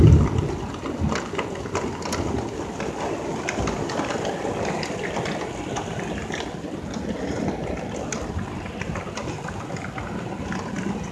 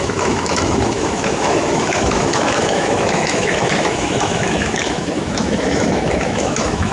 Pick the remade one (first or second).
second